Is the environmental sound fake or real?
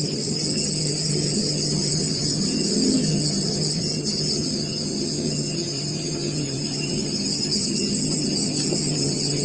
fake